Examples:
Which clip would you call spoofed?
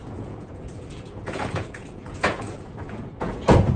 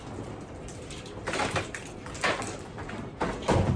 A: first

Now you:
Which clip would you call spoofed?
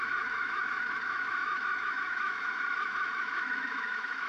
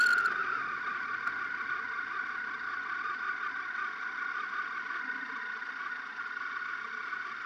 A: first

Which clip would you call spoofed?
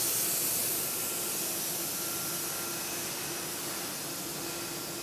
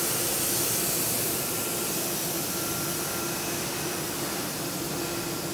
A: second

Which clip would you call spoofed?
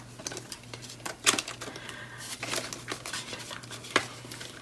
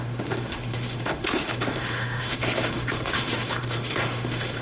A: second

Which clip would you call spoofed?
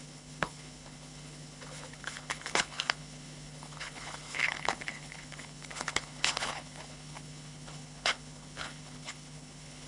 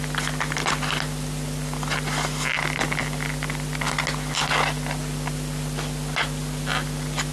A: first